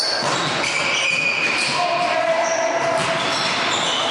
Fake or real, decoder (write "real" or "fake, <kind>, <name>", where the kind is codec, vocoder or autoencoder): real